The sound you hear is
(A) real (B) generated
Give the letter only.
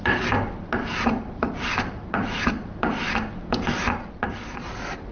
A